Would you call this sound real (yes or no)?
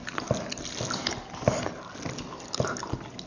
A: yes